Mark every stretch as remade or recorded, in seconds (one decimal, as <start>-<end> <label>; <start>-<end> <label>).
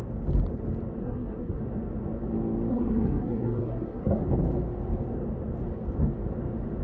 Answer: 0.0-1.0 recorded; 1.0-1.6 remade; 1.6-2.7 recorded; 2.7-4.2 remade; 4.2-6.8 recorded